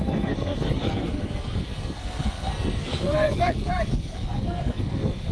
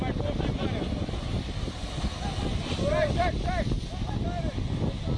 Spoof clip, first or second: first